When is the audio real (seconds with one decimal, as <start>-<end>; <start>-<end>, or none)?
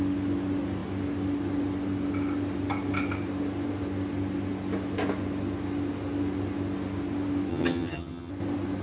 0.0-7.5; 8.3-8.8